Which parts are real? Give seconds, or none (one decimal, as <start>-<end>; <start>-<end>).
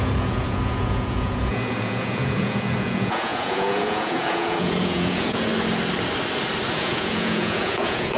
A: 5.5-6.7